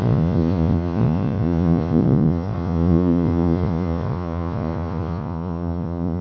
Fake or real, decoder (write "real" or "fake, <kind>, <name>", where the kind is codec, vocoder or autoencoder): fake, vocoder, Vocos